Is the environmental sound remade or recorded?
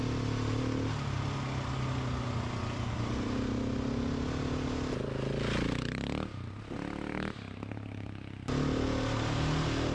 recorded